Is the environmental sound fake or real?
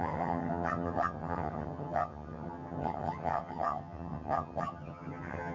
fake